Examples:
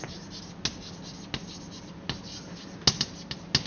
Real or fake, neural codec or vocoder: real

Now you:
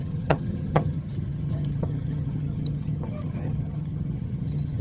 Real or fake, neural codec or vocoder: fake, vocoder, HiFi-GAN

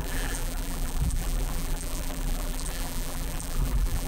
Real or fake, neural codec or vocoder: fake, vocoder, BigVGAN v2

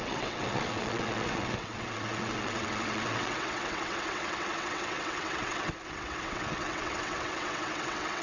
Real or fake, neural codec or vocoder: fake, vocoder, WaveNeXt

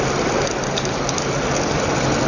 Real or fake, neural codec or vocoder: real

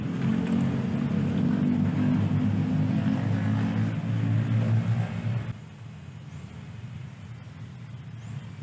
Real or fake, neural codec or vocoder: real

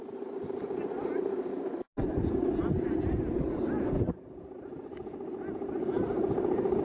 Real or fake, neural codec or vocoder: real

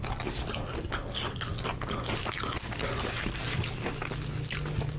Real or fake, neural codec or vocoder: real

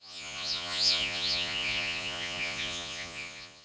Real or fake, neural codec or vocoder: fake, vocoder, Vocos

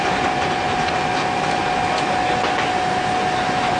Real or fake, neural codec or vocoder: real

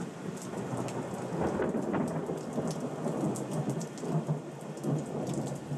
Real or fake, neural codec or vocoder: real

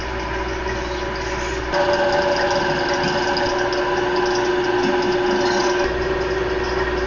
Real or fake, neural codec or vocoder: real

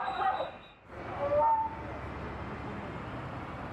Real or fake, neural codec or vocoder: real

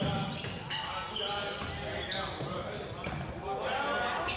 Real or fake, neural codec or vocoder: real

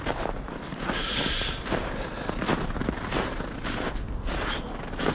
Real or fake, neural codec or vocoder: real